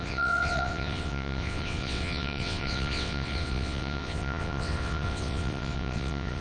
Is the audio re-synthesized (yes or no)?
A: yes